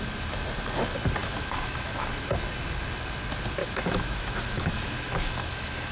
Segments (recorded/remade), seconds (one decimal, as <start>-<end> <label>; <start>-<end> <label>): 0.0-1.2 recorded; 1.2-2.1 remade; 2.1-3.6 recorded; 3.6-5.9 remade